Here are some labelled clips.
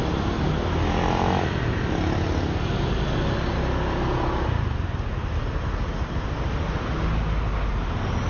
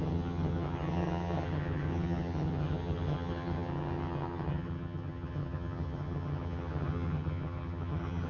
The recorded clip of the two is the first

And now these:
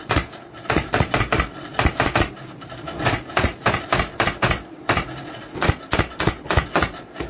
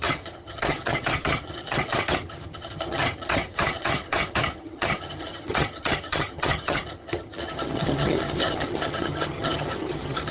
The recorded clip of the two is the first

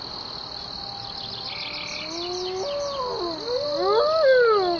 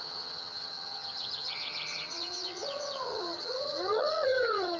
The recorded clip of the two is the first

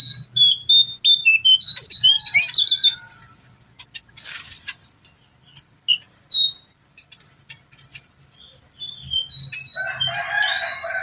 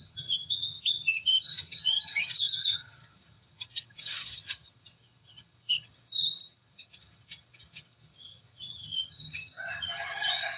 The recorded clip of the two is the first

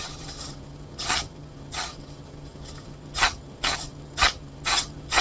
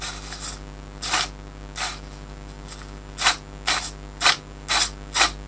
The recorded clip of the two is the second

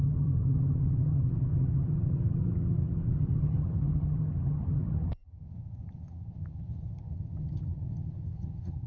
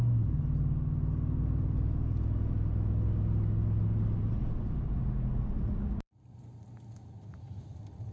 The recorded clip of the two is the second